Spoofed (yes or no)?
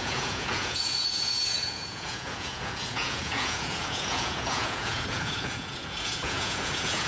yes